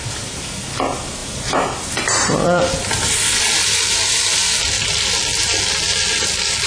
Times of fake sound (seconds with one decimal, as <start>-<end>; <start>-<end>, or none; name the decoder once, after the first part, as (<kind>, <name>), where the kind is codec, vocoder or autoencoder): 1.2-3.4 (vocoder, BigVGAN v2)